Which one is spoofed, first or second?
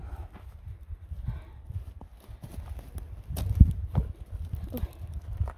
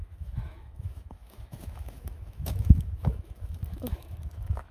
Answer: second